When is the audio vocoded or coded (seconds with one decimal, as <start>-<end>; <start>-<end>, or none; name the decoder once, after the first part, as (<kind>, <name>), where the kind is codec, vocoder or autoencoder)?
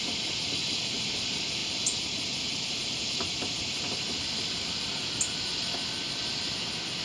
none